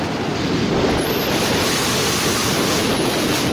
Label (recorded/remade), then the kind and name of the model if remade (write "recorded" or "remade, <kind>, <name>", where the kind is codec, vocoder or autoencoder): recorded